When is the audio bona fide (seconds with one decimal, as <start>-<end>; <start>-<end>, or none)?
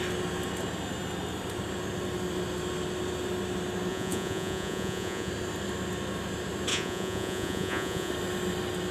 0.0-3.9; 5.3-6.7; 8.1-8.9